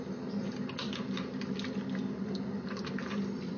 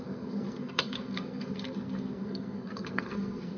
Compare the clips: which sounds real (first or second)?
first